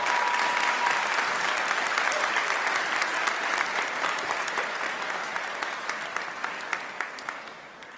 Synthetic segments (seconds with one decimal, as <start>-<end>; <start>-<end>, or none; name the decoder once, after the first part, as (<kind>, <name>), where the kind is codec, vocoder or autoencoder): none